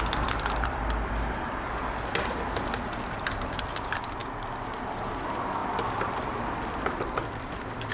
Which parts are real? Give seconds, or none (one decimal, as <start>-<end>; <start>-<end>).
4.2-4.7; 5.6-6.7